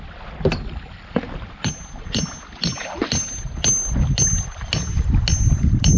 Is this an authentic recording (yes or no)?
yes